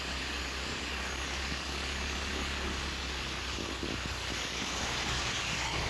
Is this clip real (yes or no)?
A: no